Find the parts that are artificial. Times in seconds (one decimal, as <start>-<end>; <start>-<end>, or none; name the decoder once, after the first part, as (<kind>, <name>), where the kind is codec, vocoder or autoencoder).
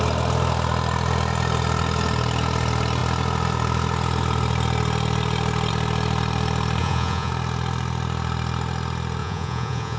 6.8-7.3 (vocoder, Vocos); 9.2-10.0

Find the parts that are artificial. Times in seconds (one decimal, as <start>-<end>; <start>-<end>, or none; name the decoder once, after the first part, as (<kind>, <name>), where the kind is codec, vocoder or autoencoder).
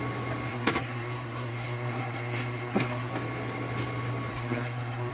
0.5-3.1 (codec, SNAC); 4.3-5.1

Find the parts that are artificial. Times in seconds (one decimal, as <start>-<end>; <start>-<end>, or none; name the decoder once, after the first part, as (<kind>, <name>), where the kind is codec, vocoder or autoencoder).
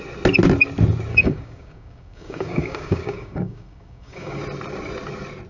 1.1-4.4 (codec, DAC)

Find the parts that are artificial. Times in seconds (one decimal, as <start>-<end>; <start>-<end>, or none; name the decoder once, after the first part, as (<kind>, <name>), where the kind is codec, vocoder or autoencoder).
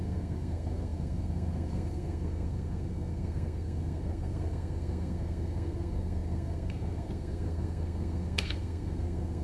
0.0-9.4 (codec, SNAC)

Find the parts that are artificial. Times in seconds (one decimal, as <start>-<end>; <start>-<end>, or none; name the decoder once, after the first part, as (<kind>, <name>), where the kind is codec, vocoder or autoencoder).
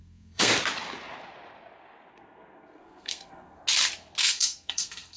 0.0-0.5 (codec, SNAC); 2.1-3.6; 4.2-5.2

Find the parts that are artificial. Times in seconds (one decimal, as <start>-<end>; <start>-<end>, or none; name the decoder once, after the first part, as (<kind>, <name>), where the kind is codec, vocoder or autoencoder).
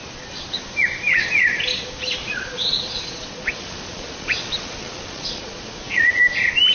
2.2-6.2 (vocoder, Vocos)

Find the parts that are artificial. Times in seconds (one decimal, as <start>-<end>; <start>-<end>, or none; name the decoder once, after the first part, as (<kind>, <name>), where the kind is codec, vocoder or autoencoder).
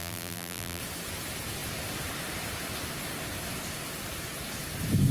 0.0-0.8 (vocoder, BigVGAN v2)